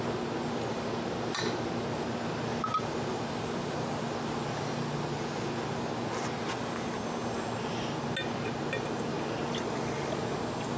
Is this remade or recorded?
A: recorded